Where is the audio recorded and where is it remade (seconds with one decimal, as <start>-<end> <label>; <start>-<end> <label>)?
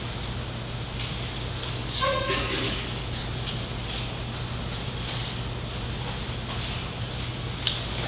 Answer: 0.0-1.6 recorded; 1.6-3.5 remade; 3.5-8.1 recorded